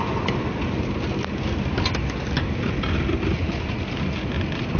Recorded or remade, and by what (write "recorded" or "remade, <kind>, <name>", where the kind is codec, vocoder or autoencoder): recorded